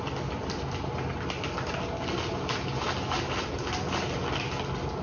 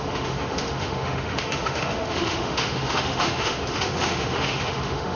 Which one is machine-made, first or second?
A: second